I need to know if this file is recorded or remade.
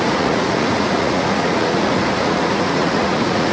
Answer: remade